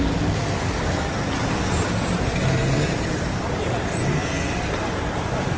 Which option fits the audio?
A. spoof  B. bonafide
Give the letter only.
B